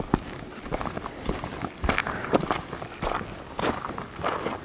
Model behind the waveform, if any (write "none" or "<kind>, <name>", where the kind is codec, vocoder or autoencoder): vocoder, BigVGAN v2